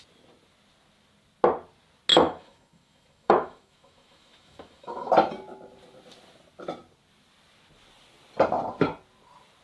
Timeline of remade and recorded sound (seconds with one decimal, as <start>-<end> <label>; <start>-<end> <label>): 0.0-2.1 recorded; 2.1-5.1 remade; 5.1-9.6 recorded